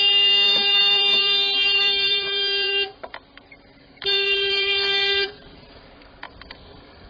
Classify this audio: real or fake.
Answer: fake